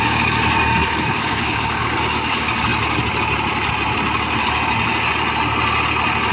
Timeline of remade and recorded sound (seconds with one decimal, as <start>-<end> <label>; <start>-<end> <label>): 0.0-2.7 remade; 2.7-6.3 recorded

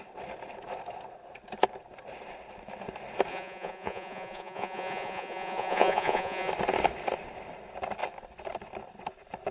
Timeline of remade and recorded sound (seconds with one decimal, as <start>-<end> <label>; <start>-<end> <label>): 0.0-3.3 recorded; 3.3-6.5 remade; 6.5-9.5 recorded